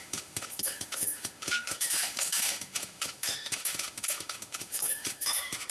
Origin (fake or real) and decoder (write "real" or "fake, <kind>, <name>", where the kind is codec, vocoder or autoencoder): fake, autoencoder, DAC-VAE